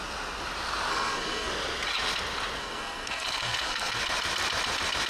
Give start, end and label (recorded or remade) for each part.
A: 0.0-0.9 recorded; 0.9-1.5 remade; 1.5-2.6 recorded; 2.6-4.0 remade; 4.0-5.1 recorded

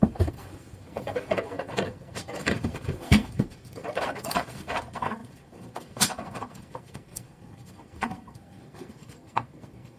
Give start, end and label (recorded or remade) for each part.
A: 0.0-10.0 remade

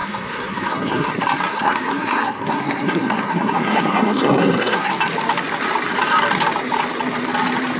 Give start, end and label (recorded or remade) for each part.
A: 0.0-1.1 remade; 1.1-1.5 recorded; 1.5-4.9 remade; 4.9-7.8 recorded

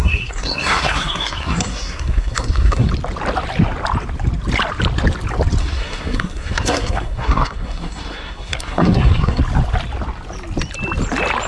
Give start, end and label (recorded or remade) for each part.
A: 0.0-2.9 remade; 2.9-5.6 recorded; 5.6-9.4 remade; 9.4-11.5 recorded

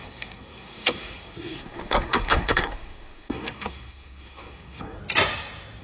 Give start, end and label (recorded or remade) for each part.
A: 0.0-5.0 remade; 5.0-5.8 recorded